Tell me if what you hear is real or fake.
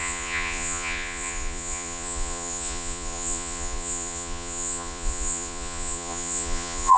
fake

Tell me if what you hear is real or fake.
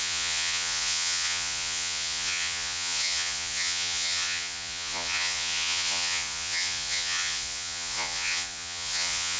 fake